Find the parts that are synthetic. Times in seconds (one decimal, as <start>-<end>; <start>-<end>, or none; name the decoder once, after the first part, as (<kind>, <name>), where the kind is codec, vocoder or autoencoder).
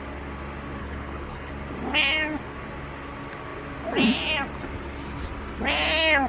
0.8-1.5 (codec, HILCodec)